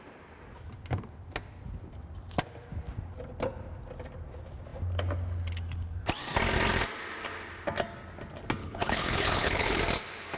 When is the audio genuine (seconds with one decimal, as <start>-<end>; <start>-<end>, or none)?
0.0-8.6; 9.8-10.4